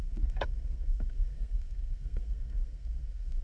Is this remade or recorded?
remade